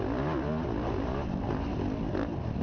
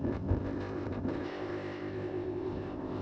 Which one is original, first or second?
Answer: first